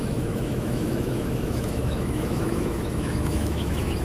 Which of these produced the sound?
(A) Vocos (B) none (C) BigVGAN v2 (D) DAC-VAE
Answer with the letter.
D